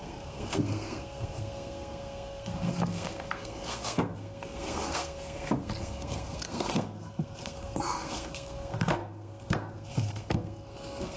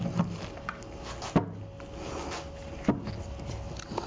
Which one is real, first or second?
second